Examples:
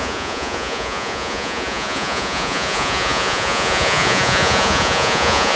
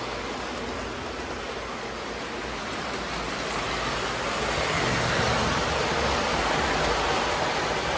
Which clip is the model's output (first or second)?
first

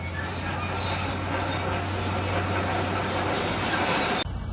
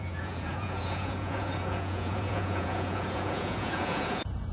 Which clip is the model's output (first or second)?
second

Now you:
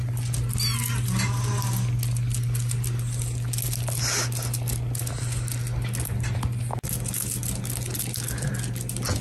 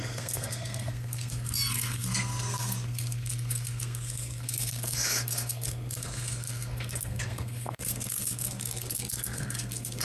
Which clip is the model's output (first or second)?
second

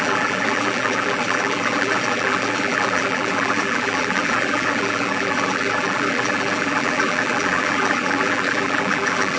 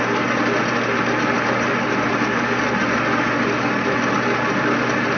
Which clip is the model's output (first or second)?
first